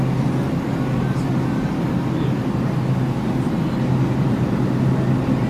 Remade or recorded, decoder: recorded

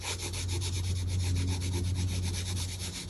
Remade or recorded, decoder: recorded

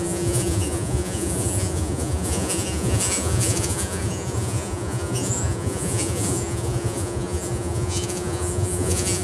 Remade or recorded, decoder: remade, vocoder, Vocos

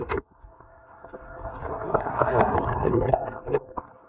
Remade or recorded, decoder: remade, codec, SNAC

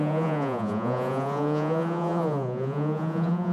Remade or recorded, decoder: remade, vocoder, Vocos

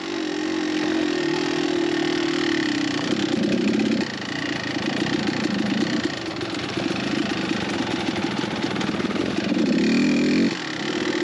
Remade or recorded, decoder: recorded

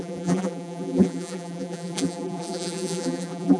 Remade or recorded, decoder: remade, vocoder, BigVGAN v2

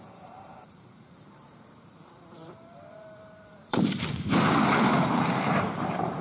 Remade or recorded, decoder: remade, vocoder, BigVGAN v2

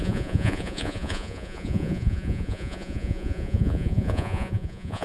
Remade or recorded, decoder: remade, vocoder, Vocos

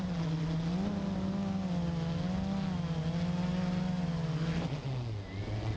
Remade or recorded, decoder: recorded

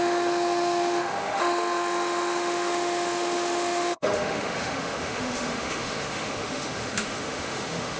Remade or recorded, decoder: remade, autoencoder, DAC-VAE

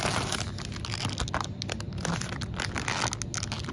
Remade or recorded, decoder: recorded